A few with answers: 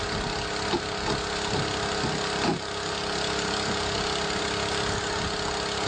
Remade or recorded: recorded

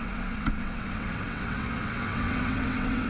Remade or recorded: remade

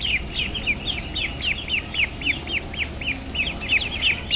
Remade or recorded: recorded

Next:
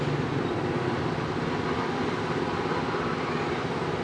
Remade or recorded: recorded